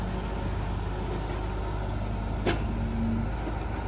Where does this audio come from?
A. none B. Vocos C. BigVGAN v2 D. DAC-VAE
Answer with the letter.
A